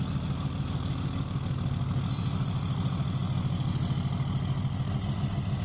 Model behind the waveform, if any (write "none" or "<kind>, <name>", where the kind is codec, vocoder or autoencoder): none